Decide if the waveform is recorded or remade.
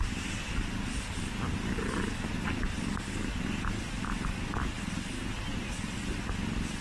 remade